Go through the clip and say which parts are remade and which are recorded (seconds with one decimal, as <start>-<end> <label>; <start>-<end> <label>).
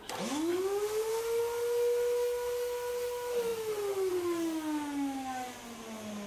0.0-6.3 recorded